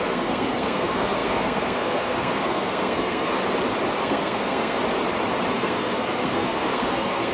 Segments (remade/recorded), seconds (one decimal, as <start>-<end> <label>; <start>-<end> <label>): 0.0-3.4 remade; 3.4-4.0 recorded; 4.0-4.8 remade; 4.8-5.5 recorded; 5.5-7.3 remade